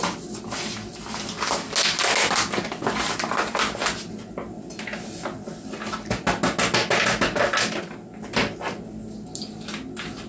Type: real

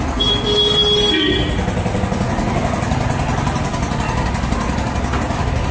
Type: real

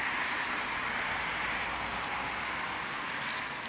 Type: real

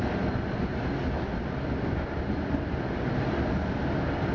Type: real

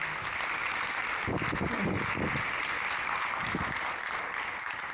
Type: real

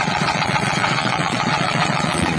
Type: fake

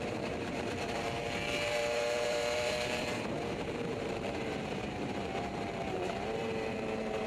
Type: fake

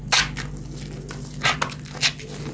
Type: real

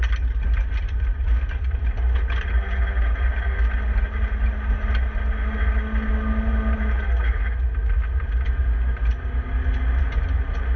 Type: real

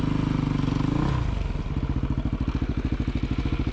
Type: real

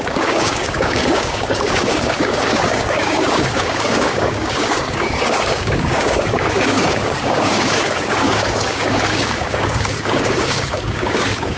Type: fake